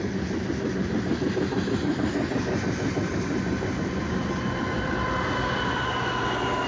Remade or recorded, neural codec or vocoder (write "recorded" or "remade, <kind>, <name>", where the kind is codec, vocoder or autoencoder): recorded